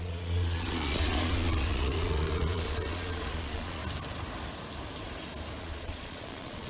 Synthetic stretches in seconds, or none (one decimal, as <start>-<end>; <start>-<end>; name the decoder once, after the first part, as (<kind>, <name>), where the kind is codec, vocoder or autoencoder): 0.0-3.8 (vocoder, Vocos); 5.6-6.7